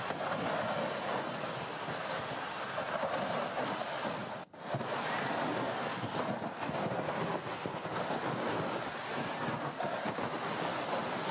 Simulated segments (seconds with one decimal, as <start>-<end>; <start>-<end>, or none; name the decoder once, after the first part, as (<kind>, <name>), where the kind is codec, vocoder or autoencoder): none